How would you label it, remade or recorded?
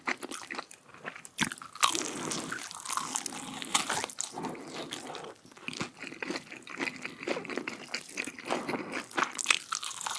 recorded